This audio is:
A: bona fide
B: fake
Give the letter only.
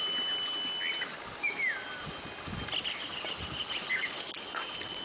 A